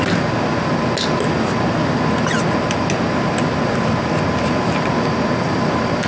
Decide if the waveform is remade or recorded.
recorded